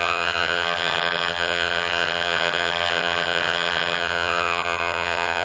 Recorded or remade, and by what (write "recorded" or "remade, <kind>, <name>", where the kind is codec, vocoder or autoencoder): remade, vocoder, HiFi-GAN